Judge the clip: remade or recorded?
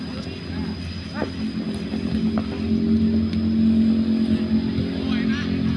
recorded